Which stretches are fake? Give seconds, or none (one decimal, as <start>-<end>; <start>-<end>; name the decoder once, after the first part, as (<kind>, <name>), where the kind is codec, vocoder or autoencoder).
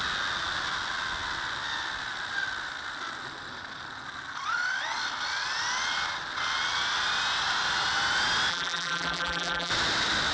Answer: 8.5-9.7 (vocoder, BigVGAN v2)